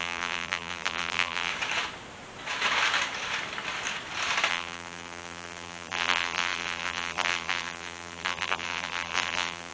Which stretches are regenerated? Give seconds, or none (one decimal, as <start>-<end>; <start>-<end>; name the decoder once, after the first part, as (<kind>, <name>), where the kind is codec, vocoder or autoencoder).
0.0-1.5 (vocoder, BigVGAN v2); 4.5-9.7